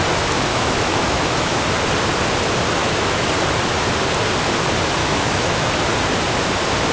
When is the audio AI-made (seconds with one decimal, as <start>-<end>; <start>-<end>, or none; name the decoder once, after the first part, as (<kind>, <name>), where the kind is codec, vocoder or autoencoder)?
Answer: 0.5-1.6 (autoencoder, DAC-VAE); 2.8-3.3; 5.0-5.7